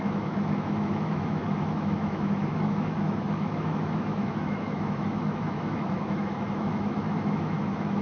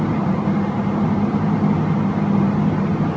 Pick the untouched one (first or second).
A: second